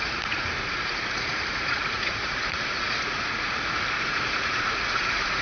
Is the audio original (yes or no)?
no